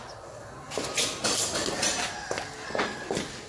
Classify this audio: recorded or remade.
recorded